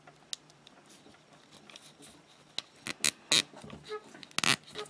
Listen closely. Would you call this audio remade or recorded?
recorded